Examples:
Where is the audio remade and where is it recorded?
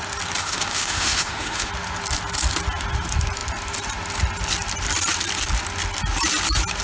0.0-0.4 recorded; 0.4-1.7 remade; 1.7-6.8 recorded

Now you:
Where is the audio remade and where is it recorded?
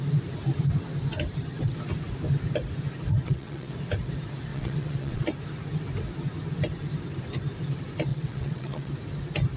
0.0-3.2 recorded; 3.2-3.7 remade; 3.7-4.5 recorded; 4.5-5.2 remade; 5.2-8.1 recorded; 8.1-8.9 remade; 8.9-9.6 recorded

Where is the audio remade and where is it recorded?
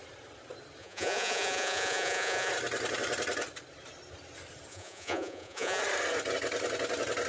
0.0-0.8 recorded; 0.8-2.5 remade; 2.5-4.7 recorded; 4.7-5.8 remade; 5.8-7.3 recorded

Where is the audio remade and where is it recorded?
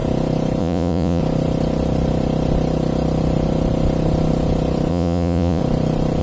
0.0-0.6 recorded; 0.6-1.2 remade; 1.2-4.9 recorded; 4.9-5.6 remade; 5.6-6.2 recorded